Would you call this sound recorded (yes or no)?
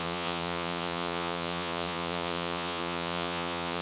no